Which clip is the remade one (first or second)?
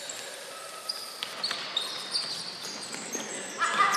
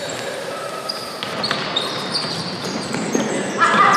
second